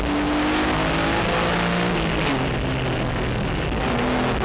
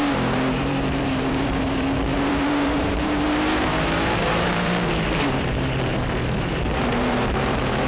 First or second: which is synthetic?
second